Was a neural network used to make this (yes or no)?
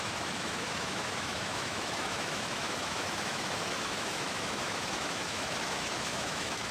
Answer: yes